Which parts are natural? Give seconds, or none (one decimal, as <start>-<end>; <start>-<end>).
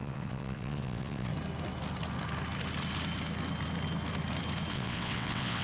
1.3-4.7